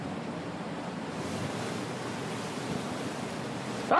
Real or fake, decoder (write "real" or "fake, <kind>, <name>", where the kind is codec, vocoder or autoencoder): fake, vocoder, BigVGAN v2